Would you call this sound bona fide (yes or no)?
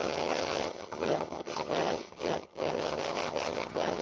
no